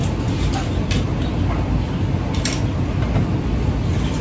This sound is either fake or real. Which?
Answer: real